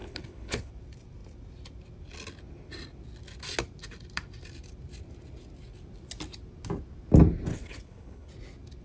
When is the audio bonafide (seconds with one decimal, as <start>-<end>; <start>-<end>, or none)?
0.7-7.5; 8.3-8.8